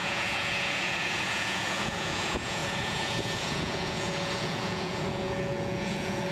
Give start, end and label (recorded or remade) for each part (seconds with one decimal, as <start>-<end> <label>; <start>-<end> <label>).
0.0-6.3 remade